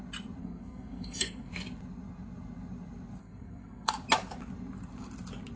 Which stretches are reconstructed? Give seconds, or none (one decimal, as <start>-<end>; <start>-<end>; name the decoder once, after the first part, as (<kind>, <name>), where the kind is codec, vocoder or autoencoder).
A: 0.4-1.5 (codec, SNAC); 3.2-3.9